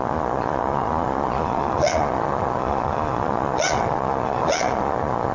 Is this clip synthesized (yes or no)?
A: yes